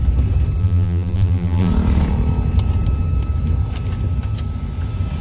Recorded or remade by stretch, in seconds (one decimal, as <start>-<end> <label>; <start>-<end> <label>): 0.0-0.6 recorded; 0.6-1.7 remade; 1.7-5.2 recorded